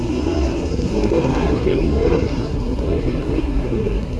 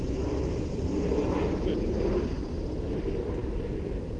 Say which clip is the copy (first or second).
first